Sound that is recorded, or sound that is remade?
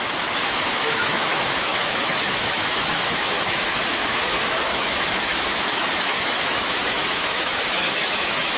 remade